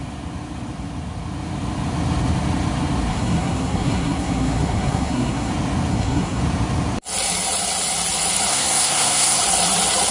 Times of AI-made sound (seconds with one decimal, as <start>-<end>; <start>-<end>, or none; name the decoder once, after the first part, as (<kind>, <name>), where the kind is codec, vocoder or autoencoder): 3.1-5.5 (codec, SNAC); 5.9-6.4; 8.5-9.4